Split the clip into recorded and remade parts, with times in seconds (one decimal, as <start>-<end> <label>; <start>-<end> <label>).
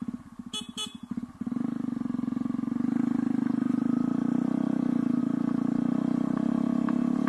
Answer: 0.0-7.3 recorded